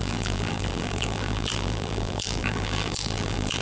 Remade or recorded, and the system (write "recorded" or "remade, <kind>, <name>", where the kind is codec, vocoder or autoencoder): remade, vocoder, BigVGAN v2